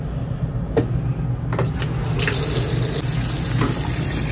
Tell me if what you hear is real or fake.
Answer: real